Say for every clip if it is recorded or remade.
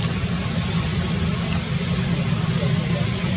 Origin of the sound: recorded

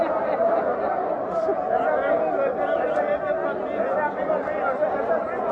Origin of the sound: recorded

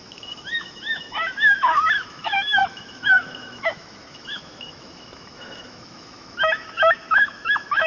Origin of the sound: remade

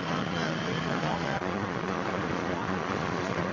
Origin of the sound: remade